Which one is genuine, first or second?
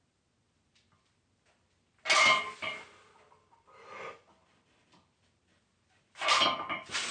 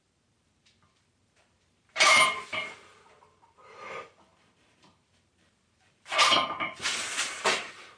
first